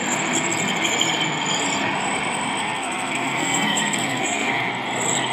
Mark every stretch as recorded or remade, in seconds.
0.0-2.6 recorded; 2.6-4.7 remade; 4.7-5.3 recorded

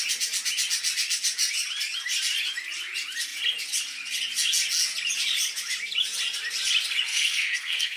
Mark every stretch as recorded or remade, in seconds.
0.0-7.1 recorded; 7.1-8.0 remade

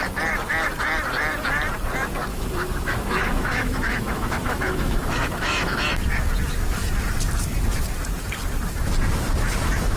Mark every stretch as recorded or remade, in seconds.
0.0-2.3 recorded; 2.3-5.9 remade; 5.9-10.0 recorded

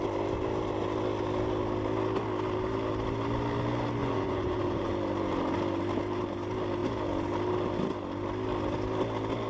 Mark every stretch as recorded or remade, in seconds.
0.0-4.0 recorded; 4.0-4.9 remade; 4.9-9.5 recorded

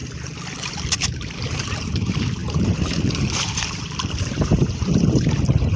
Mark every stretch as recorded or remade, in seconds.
0.0-5.8 remade

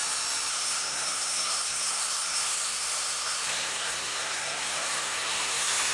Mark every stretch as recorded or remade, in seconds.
0.0-0.5 recorded; 0.5-5.9 remade